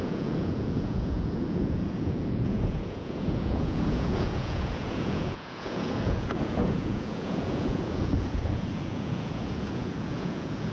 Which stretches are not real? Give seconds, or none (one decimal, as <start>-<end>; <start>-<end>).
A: 0.0-10.7